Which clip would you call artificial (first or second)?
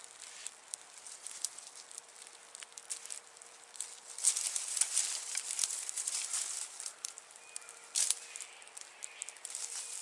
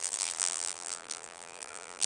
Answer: second